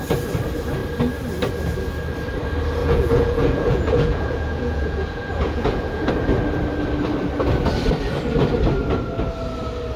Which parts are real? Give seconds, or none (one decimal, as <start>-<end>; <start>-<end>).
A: 0.0-2.8; 6.1-10.0